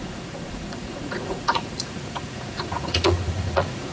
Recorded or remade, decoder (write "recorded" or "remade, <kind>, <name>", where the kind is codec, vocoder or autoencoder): remade, vocoder, Vocos